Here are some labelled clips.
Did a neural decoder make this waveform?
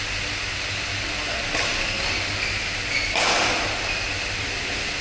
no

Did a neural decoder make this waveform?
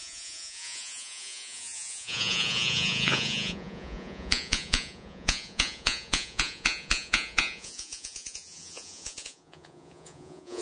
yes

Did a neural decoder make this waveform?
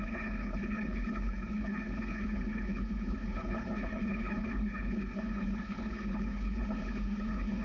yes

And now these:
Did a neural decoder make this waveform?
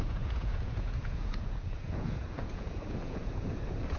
yes